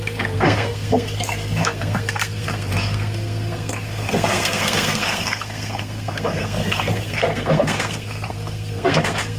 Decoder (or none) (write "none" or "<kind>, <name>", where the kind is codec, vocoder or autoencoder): codec, SNAC